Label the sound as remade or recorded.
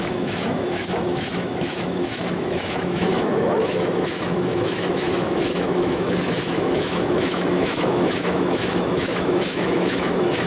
remade